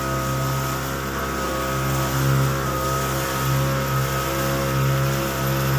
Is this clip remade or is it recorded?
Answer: recorded